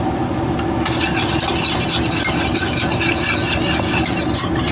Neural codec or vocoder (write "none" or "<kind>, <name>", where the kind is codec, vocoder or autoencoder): none